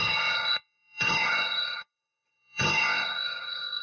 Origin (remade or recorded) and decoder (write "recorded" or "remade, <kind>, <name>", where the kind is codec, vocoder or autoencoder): remade, codec, ZipCodec